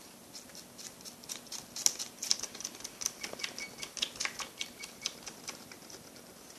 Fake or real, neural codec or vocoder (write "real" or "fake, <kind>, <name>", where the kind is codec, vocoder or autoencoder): real